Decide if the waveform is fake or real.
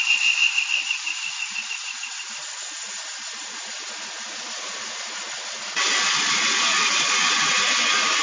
real